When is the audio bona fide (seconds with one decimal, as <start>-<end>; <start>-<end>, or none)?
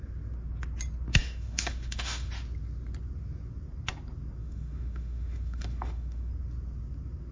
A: 0.0-1.1; 2.3-4.4; 6.3-7.3